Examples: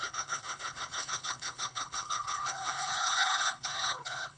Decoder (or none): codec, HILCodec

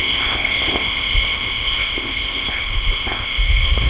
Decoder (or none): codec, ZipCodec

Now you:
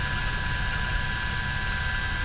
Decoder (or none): none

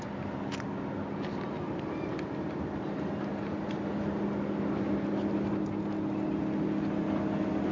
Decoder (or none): none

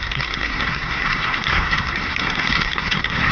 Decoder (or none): codec, SNAC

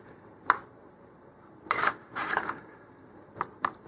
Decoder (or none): vocoder, BigVGAN v2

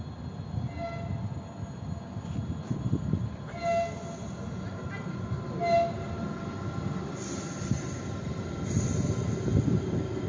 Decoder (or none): none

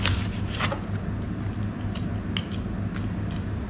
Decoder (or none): none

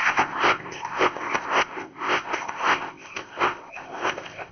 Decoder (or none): codec, ZipCodec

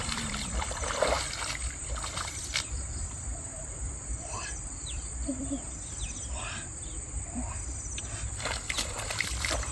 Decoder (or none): vocoder, BigVGAN v2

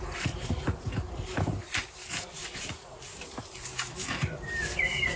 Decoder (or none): vocoder, BigVGAN v2